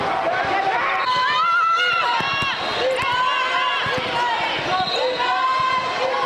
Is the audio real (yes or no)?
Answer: yes